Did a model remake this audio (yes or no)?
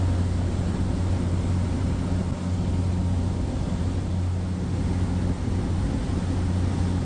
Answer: no